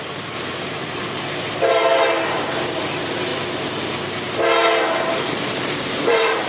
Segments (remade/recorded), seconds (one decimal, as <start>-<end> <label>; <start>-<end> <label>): 0.0-0.8 remade; 0.8-1.7 recorded; 1.7-3.3 remade; 3.3-4.7 recorded; 4.7-6.5 remade